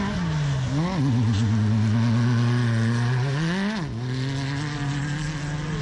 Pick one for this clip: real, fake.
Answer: real